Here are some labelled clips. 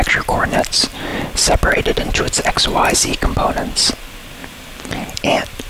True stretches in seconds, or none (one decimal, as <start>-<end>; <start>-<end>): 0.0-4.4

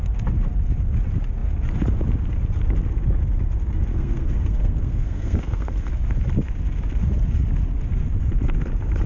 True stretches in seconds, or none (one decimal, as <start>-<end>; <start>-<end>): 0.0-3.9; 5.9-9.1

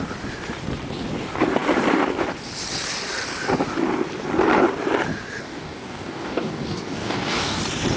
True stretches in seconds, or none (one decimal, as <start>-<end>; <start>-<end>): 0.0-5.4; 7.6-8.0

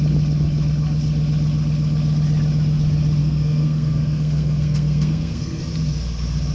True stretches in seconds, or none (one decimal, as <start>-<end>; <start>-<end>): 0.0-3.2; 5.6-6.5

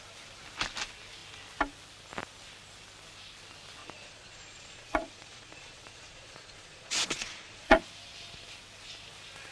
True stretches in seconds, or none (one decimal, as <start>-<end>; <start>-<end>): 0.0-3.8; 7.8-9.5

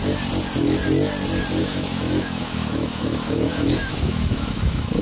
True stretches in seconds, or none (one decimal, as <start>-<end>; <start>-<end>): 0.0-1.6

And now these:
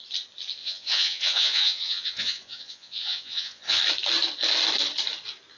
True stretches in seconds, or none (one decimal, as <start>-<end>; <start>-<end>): 0.0-0.6; 3.8-5.6

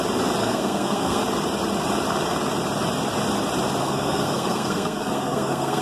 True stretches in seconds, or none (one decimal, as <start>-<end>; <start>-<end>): 0.0-0.4; 1.2-3.8